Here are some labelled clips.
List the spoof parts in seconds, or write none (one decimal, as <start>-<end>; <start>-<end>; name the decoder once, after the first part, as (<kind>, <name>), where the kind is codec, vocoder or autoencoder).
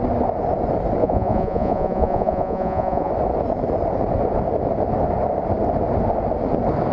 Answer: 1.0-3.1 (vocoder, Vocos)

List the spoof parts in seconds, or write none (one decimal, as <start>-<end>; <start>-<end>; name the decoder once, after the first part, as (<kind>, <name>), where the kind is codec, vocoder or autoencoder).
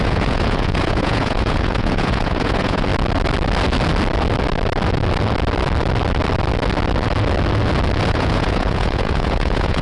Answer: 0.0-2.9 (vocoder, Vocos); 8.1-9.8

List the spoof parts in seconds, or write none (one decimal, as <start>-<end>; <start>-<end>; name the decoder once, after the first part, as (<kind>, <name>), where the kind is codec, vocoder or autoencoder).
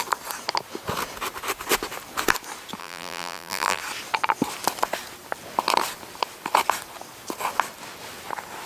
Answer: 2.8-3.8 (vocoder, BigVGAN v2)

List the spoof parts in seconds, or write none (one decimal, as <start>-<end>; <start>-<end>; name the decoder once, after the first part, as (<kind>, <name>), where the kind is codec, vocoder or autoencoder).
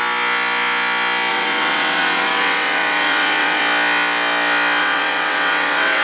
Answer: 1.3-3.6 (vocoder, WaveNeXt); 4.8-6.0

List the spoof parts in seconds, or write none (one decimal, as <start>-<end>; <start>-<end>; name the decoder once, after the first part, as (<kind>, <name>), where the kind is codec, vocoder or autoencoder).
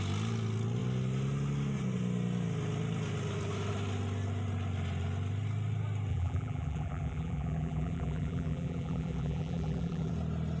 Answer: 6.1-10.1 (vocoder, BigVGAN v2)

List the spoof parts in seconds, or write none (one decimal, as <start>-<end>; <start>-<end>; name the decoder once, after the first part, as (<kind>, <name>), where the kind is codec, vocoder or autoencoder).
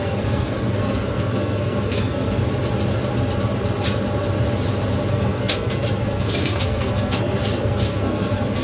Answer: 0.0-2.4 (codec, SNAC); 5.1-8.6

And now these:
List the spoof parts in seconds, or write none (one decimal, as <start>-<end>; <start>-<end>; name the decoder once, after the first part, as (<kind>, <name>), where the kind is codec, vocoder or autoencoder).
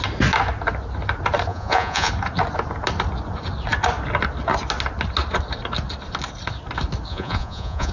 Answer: 1.5-2.1 (vocoder, Vocos); 7.1-7.9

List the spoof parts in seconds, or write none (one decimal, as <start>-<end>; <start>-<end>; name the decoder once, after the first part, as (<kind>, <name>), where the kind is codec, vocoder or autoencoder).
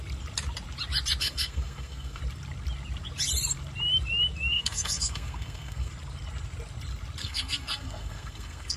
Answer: 1.2-2.2 (codec, SNAC); 4.5-5.9; 7.2-8.8